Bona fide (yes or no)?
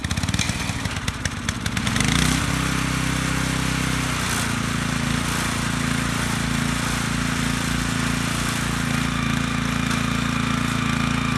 yes